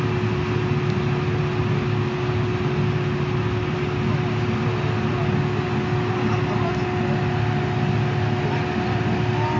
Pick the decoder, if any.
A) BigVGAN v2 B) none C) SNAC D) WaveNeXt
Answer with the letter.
B